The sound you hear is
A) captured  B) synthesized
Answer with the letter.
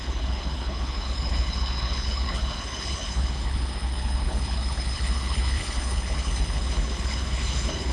B